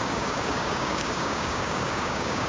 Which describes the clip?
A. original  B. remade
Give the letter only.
B